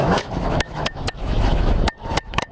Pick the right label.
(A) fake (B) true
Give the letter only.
A